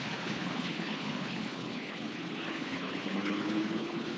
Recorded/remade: remade